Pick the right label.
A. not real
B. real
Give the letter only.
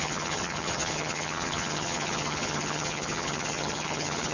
A